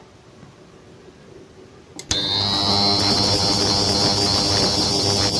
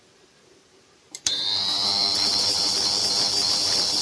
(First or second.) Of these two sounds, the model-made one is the second